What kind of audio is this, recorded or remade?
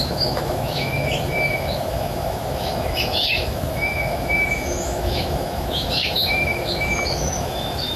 remade